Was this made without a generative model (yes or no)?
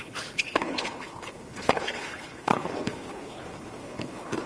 no